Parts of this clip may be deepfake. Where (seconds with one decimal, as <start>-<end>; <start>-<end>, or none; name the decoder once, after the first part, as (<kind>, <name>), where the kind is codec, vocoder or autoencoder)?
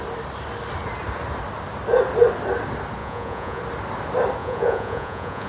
3.0-3.6 (vocoder, Vocos); 4.4-5.5